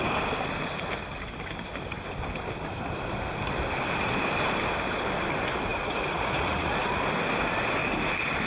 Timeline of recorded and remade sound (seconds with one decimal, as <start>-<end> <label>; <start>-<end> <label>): 0.0-5.7 recorded; 5.7-7.0 remade; 7.0-8.5 recorded